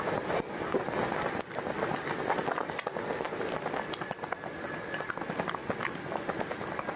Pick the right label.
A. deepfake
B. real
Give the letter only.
B